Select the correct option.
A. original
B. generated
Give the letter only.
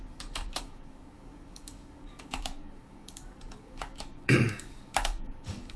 B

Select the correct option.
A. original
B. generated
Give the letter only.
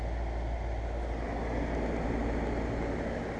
A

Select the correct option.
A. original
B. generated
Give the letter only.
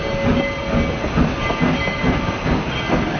A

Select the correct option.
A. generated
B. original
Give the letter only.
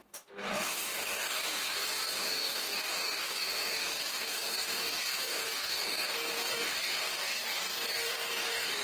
A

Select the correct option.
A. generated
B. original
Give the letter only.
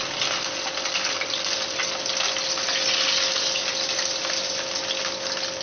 B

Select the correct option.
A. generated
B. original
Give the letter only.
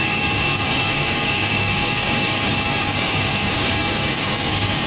A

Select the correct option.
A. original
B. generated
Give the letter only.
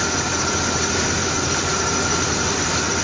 A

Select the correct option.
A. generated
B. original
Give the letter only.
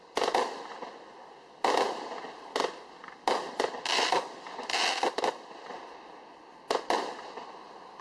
B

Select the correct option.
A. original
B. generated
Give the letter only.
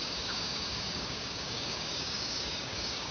B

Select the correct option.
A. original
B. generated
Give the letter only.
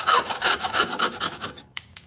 B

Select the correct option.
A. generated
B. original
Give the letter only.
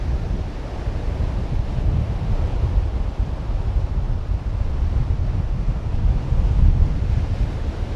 B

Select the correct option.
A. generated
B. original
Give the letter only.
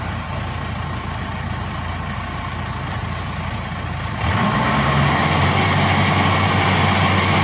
B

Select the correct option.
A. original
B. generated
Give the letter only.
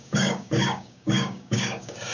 B